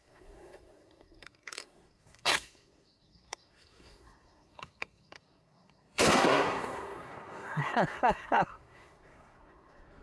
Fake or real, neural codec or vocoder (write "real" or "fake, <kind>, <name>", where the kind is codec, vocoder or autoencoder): fake, codec, SNAC